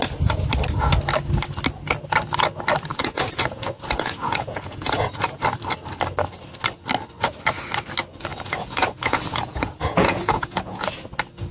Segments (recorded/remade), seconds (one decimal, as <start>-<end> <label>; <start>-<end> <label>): 0.0-2.9 recorded; 2.9-5.4 remade; 5.4-8.3 recorded; 8.3-10.9 remade; 10.9-11.5 recorded